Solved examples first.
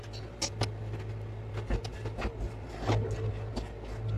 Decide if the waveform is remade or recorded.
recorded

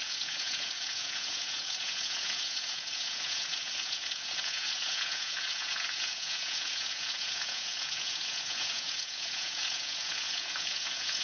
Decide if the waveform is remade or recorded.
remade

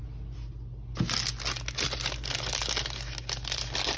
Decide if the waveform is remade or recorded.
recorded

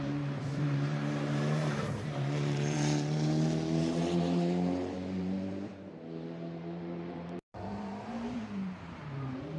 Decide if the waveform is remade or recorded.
remade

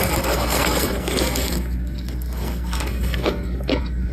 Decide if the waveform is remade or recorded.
remade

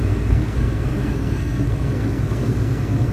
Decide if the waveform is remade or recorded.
remade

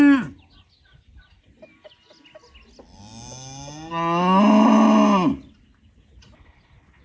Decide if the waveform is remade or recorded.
recorded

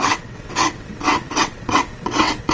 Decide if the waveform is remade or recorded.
remade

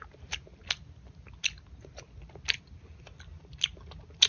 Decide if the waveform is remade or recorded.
recorded